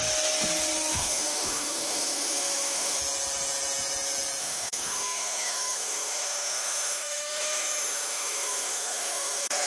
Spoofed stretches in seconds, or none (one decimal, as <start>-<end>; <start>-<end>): 0.9-3.0; 4.4-9.7

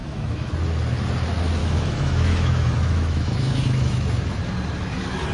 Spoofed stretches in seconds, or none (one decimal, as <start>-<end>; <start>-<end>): 0.0-0.5; 1.6-4.4

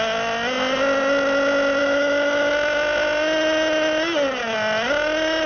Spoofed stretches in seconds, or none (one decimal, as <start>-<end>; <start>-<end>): 1.8-2.5

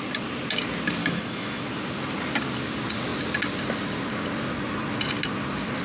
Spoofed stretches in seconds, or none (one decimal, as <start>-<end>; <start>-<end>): 1.0-1.6

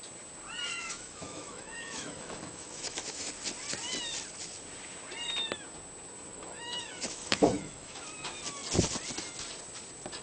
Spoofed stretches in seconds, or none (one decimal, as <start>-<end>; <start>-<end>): 0.7-3.3; 6.3-8.0

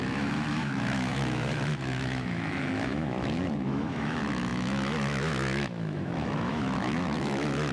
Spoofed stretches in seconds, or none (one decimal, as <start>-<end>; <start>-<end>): 0.0-7.7